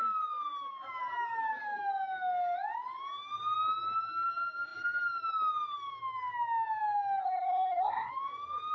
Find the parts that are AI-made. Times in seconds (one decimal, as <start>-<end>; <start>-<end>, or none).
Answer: 7.2-8.1